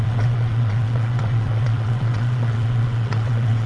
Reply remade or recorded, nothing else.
remade